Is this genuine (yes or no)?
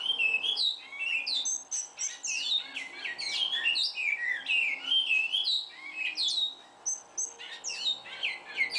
yes